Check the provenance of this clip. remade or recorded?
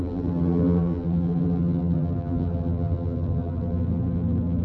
remade